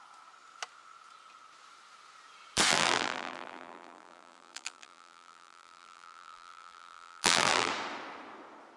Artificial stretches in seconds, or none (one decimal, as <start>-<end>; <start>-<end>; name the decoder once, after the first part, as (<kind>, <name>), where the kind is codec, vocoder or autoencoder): 2.7-7.7 (vocoder, BigVGAN v2)